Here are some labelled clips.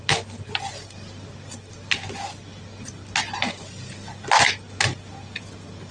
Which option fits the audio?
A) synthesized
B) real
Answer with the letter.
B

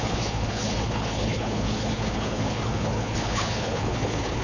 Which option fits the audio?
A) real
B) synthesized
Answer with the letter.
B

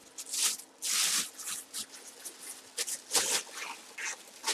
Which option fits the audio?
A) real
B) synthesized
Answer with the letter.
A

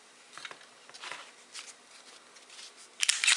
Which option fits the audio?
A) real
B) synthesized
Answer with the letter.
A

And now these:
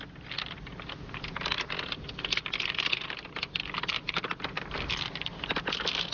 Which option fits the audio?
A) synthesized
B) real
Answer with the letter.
B